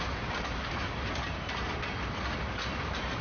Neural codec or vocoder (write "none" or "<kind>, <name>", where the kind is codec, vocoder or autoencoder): none